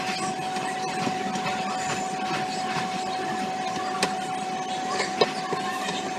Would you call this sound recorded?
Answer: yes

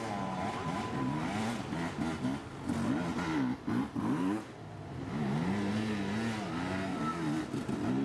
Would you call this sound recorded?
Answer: yes